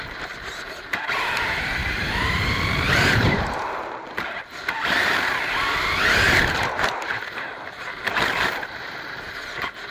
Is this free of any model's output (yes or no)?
no